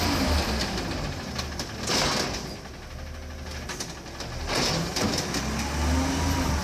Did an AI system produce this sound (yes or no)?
no